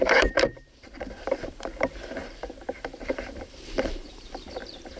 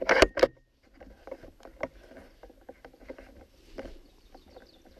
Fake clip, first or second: first